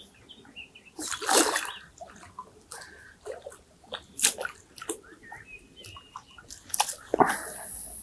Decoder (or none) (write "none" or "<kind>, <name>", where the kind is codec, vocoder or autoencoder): none